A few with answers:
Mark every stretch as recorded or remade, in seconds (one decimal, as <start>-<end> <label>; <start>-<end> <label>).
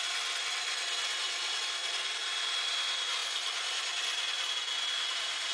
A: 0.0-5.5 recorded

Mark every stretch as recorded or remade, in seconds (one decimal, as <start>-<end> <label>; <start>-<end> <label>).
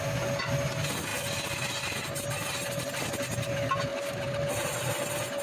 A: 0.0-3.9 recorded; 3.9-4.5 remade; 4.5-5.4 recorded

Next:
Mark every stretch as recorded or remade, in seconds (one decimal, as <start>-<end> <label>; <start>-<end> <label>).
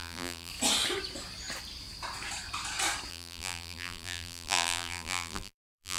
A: 0.0-0.5 remade; 0.5-3.1 recorded; 3.1-6.0 remade